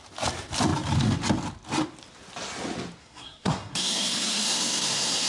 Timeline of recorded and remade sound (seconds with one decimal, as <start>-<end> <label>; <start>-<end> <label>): 0.0-3.0 recorded; 3.0-5.3 remade